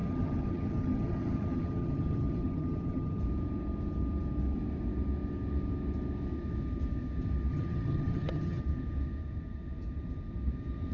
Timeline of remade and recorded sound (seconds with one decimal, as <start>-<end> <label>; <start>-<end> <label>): 0.0-3.2 remade; 3.2-7.5 recorded; 7.5-8.6 remade; 8.6-10.9 recorded